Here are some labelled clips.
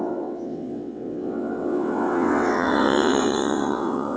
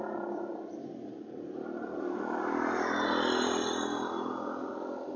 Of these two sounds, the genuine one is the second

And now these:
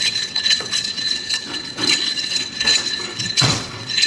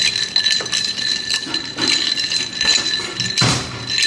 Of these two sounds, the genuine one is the second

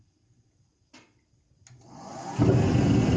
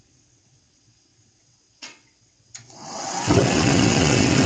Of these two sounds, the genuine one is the first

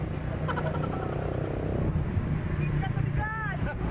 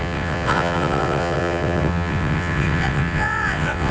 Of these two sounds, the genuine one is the first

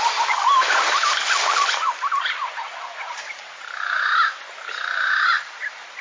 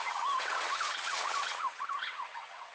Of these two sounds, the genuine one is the first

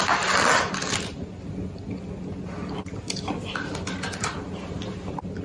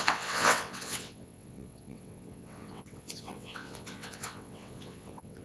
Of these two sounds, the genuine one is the first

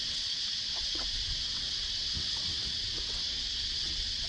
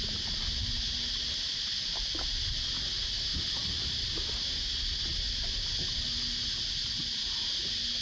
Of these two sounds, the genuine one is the second